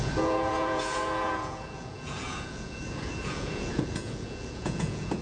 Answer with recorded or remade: remade